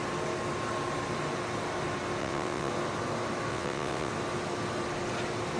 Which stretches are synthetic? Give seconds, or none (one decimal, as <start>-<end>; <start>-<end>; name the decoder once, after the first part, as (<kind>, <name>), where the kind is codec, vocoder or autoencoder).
2.2-2.7 (vocoder, WaveNeXt); 3.5-4.1